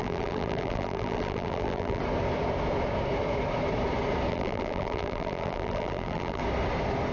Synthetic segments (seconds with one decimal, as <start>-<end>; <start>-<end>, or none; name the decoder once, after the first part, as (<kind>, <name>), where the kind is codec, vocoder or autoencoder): 0.0-2.0 (vocoder, BigVGAN v2); 4.3-6.4